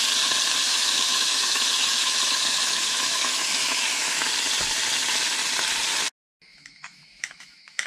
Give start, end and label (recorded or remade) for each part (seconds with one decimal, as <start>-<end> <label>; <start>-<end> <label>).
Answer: 0.0-0.7 recorded; 0.7-4.3 remade; 4.3-6.5 recorded; 6.5-7.9 remade